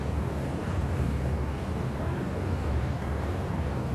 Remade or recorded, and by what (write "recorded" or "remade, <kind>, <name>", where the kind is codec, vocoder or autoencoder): remade, codec, DAC